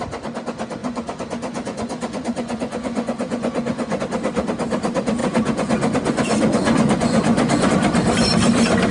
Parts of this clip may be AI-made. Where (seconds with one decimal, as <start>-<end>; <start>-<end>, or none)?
0.8-4.0; 5.2-7.7